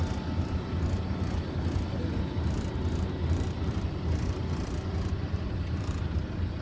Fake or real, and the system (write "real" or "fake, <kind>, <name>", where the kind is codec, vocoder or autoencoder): fake, vocoder, BigVGAN v2